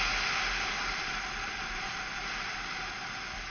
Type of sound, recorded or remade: recorded